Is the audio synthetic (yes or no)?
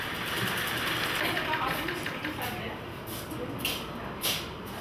no